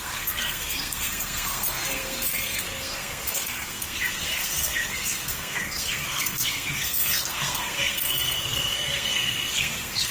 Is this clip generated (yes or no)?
yes